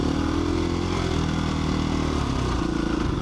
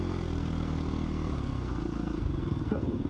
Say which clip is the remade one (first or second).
second